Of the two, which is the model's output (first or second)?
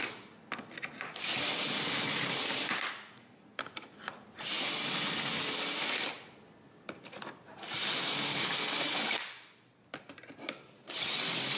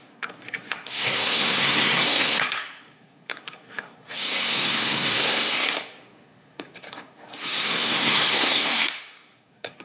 second